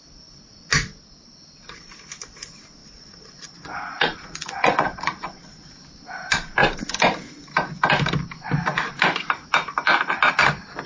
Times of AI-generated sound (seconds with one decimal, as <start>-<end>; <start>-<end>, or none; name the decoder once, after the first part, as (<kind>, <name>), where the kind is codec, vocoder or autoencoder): 2.8-5.8 (vocoder, Vocos)